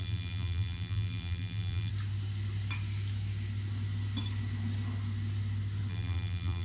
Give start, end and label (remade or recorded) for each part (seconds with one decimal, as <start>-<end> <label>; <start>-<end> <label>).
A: 0.0-1.9 remade; 1.9-5.9 recorded; 5.9-6.6 remade